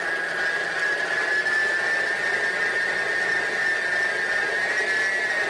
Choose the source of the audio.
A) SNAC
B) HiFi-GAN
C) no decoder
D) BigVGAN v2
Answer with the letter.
C